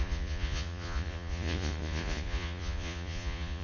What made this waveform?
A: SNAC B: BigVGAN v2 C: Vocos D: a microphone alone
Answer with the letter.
C